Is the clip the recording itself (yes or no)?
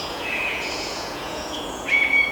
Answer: no